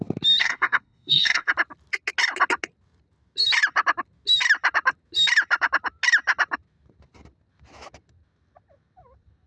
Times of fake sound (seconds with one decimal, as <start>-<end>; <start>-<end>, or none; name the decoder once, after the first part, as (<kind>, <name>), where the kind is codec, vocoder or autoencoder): 0.4-1.5 (codec, SNAC)